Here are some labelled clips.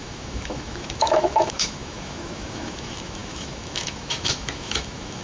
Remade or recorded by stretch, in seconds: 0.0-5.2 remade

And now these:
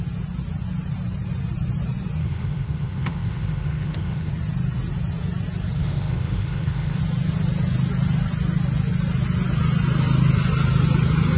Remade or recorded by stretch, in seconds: 0.0-2.2 recorded; 2.2-4.3 remade; 4.3-5.8 recorded; 5.8-7.0 remade; 7.0-11.4 recorded

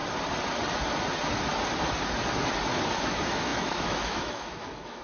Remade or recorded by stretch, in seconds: 0.0-3.0 recorded; 3.0-5.0 remade

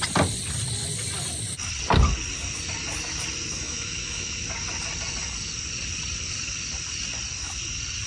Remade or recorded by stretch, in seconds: 0.0-3.6 recorded; 3.6-4.4 remade; 4.4-8.1 recorded